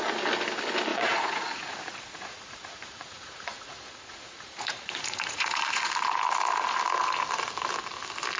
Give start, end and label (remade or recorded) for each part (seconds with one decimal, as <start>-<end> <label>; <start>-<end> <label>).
0.0-0.9 recorded; 0.9-5.9 remade; 5.9-8.4 recorded